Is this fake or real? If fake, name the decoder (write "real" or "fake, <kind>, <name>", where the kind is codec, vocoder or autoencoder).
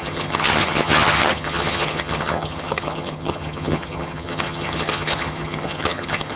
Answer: fake, vocoder, HiFi-GAN